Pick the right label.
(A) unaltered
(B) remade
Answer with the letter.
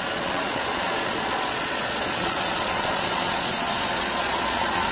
B